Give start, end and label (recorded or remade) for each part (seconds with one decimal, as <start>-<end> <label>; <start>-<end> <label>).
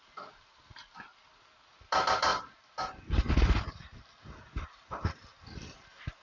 0.0-6.2 recorded